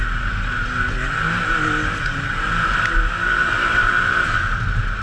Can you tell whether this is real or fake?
real